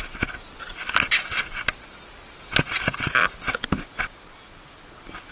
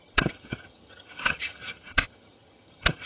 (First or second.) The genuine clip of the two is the first